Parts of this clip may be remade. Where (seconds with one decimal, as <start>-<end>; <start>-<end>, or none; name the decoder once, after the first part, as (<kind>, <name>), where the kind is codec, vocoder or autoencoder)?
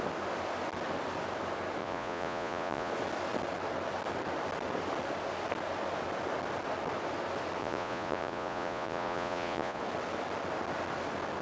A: 1.8-2.9 (vocoder, Vocos); 7.6-9.8